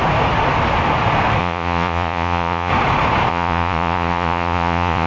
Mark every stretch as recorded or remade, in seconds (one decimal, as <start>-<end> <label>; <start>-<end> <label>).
0.0-1.4 recorded; 1.4-2.7 remade; 2.7-3.3 recorded; 3.3-5.1 remade